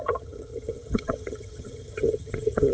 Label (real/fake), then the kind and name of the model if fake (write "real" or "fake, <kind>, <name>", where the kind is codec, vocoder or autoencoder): fake, vocoder, HiFi-GAN